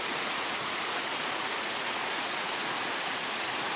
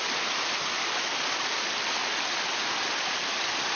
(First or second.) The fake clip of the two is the first